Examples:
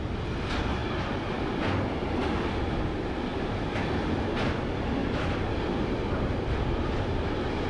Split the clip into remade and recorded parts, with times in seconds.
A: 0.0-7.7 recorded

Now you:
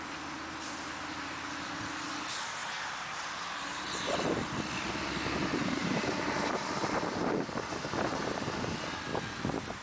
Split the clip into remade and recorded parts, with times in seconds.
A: 0.0-5.8 recorded; 5.8-8.3 remade; 8.3-9.8 recorded

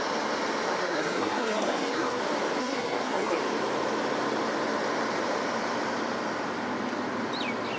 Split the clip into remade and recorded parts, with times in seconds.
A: 0.0-0.8 recorded; 0.8-2.2 remade; 2.2-2.6 recorded; 2.6-3.4 remade; 3.4-7.8 recorded

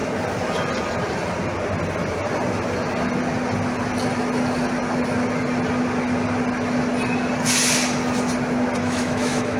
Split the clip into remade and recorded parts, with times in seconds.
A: 0.0-8.8 recorded; 8.8-9.6 remade